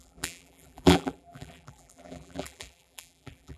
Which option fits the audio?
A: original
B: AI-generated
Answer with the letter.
B